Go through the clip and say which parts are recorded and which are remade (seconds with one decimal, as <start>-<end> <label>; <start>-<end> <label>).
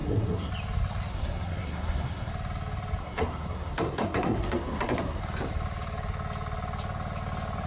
0.0-0.5 remade; 0.5-1.1 recorded; 1.1-2.3 remade; 2.3-3.0 recorded; 3.0-5.2 remade; 5.2-7.7 recorded